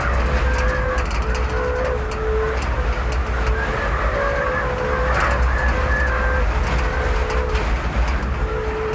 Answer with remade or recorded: recorded